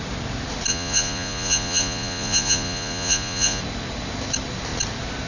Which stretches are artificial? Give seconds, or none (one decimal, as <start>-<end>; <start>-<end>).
0.7-3.6